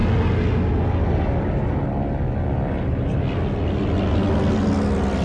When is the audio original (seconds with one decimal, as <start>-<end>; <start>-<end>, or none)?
0.0-5.2